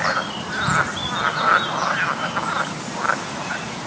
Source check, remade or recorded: recorded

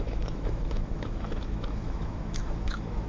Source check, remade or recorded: remade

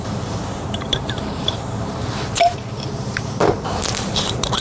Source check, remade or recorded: remade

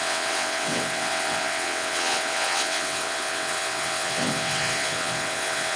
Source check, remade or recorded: remade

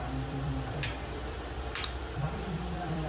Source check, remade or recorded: remade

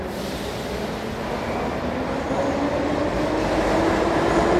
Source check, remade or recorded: recorded